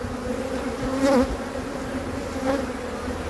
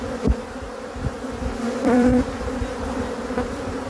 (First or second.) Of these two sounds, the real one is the first